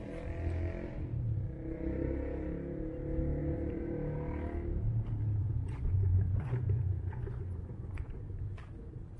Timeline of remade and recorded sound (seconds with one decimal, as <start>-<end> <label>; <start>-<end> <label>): 0.0-5.4 recorded; 5.4-8.2 remade; 8.2-9.2 recorded